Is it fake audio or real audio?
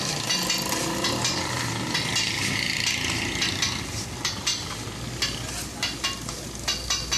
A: real